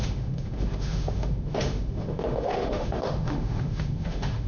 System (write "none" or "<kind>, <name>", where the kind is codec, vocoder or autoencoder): autoencoder, DAC-VAE